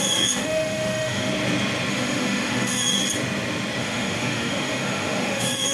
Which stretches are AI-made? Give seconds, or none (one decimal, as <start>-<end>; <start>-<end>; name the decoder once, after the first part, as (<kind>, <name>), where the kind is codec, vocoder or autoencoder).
0.0-1.3 (autoencoder, DAC-VAE); 1.9-3.0; 3.8-5.7